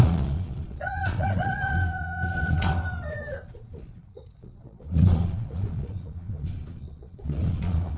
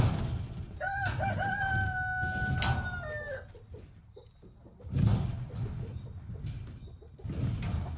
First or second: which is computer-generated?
first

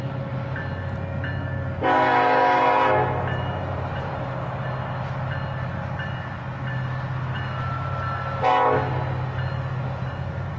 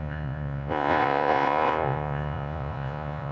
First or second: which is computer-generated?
second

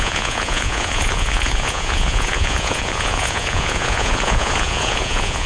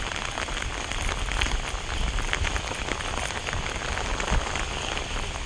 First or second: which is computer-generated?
first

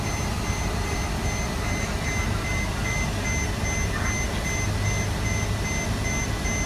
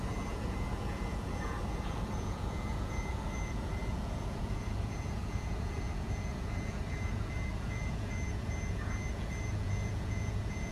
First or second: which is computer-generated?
second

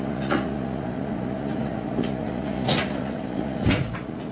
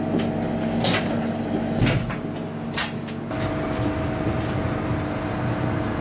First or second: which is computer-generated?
first